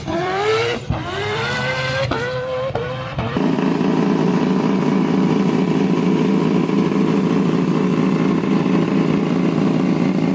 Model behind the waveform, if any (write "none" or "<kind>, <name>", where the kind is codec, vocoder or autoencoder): vocoder, BigVGAN v2